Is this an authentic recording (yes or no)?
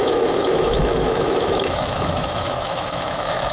no